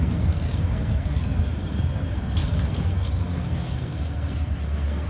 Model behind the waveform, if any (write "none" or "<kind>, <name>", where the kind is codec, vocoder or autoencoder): codec, SNAC